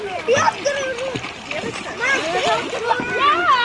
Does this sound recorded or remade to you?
recorded